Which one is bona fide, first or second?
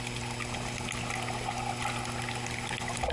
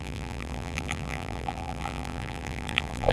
first